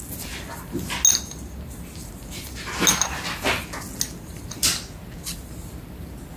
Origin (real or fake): real